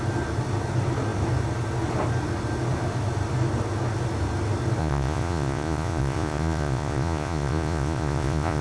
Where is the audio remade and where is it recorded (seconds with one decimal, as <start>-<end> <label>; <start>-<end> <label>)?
0.0-4.8 recorded; 4.8-8.6 remade